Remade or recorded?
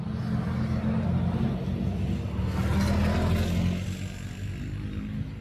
recorded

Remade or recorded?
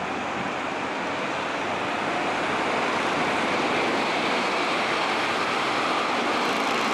recorded